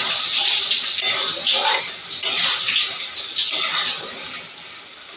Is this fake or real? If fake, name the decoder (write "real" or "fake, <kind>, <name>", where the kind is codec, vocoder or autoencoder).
real